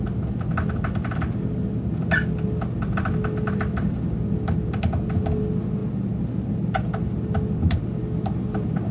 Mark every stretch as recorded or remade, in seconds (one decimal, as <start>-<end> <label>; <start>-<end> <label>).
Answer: 0.0-8.9 recorded